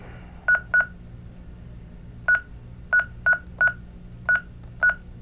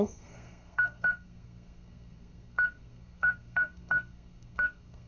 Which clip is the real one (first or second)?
first